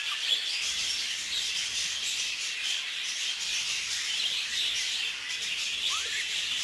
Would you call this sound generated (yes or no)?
yes